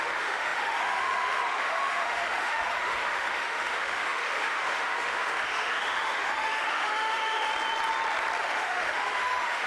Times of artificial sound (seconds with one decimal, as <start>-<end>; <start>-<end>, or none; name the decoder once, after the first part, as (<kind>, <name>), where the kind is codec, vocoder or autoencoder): 0.0-7.5 (autoencoder, DAC-VAE); 8.4-9.7

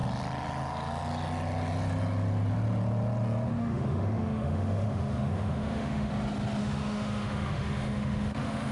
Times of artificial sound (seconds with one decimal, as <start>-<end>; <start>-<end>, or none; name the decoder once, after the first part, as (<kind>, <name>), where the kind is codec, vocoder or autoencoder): 3.6-6.1 (autoencoder, DAC-VAE); 6.6-8.7

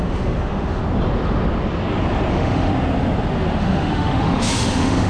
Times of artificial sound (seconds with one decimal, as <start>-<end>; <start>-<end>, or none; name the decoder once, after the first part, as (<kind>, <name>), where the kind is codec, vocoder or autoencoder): 0.0-0.8 (autoencoder, DAC-VAE); 2.3-2.7; 3.6-5.1

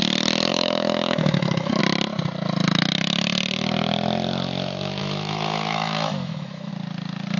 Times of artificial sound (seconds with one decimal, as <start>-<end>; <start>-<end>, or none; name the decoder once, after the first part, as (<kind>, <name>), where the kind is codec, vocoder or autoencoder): 0.5-1.8 (autoencoder, DAC-VAE); 5.0-6.7

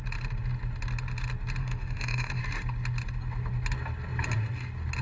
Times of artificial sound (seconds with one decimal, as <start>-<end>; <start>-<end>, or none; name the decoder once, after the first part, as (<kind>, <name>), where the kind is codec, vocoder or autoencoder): 1.6-2.4 (autoencoder, DAC-VAE)

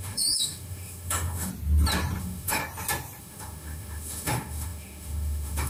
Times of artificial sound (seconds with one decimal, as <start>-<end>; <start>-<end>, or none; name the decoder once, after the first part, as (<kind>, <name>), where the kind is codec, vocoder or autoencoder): 0.0-1.5 (autoencoder, DAC-VAE); 2.2-2.6; 3.2-5.7